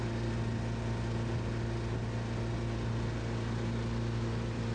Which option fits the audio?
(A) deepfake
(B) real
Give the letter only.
B